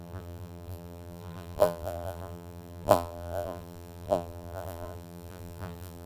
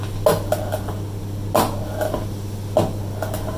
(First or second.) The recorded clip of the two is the second